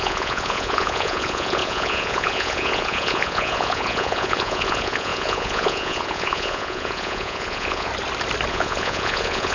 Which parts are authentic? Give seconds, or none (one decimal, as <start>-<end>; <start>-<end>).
7.9-8.5